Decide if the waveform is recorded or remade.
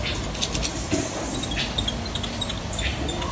recorded